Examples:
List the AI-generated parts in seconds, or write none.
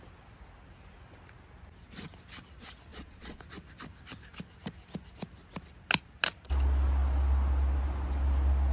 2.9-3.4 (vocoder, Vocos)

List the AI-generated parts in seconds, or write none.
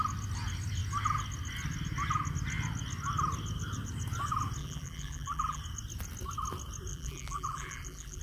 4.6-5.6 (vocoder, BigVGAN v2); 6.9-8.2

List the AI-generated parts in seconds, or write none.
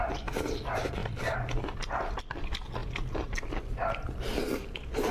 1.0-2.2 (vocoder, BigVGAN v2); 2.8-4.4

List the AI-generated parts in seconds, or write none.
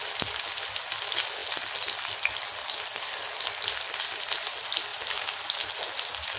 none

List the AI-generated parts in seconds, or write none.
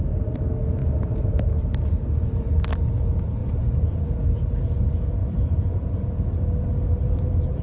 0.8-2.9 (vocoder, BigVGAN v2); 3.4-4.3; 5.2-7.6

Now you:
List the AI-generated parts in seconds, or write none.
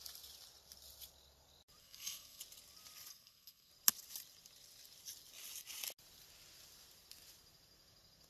1.8-2.4 (codec, SNAC); 3.1-3.7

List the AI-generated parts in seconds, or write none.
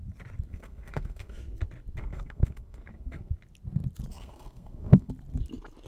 0.5-1.4 (codec, SNAC); 2.0-3.3; 4.1-5.1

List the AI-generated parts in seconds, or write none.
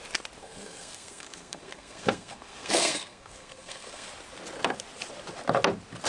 0.4-4.1 (codec, SNAC)